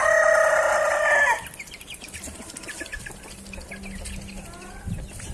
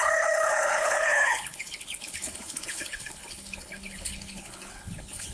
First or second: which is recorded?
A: first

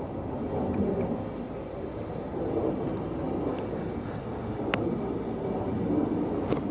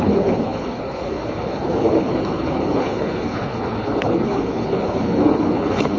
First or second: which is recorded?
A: first